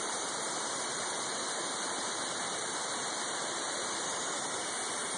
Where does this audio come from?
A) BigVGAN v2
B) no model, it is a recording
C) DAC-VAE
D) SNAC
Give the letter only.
A